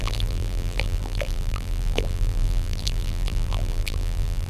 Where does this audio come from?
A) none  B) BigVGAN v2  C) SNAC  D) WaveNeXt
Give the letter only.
B